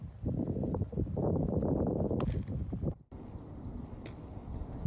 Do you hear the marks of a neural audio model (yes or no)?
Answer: no